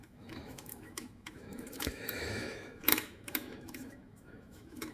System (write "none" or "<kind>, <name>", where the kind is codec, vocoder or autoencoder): autoencoder, DAC-VAE